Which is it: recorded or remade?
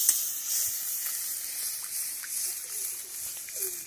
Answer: recorded